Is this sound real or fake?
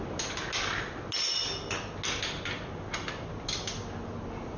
real